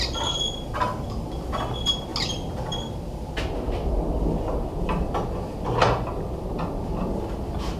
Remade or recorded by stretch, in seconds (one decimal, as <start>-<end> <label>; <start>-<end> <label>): 0.0-7.8 recorded